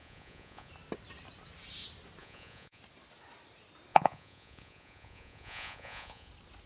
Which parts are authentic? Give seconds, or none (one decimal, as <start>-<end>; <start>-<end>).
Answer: 0.7-2.2; 2.8-3.9; 6.3-6.7